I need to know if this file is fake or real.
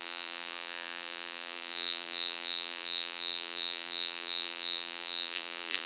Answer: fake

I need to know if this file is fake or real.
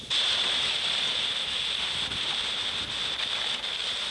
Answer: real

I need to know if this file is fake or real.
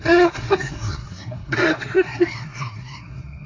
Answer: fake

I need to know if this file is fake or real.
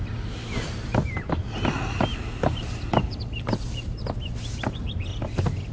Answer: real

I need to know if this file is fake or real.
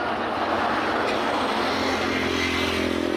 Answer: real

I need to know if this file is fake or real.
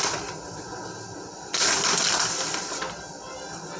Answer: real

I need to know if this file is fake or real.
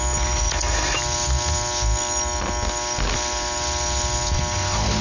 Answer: real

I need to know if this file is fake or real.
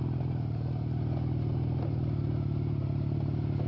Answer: real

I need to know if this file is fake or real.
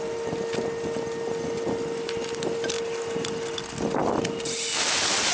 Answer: real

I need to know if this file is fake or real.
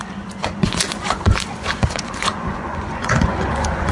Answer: fake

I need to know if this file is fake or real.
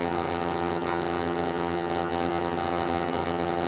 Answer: fake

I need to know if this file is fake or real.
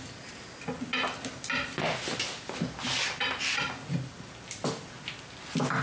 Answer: real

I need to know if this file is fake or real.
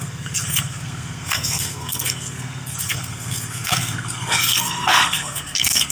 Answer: fake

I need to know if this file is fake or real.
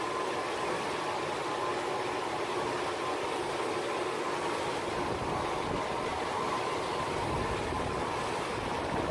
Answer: real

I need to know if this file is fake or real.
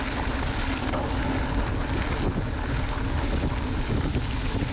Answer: real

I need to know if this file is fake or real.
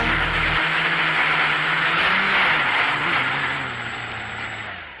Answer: real